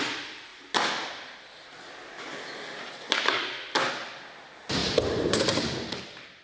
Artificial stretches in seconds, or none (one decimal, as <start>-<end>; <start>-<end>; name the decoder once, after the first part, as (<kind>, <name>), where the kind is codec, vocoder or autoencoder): none